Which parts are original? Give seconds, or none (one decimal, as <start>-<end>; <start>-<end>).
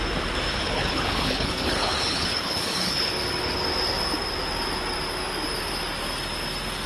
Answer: 0.0-0.5; 3.1-6.9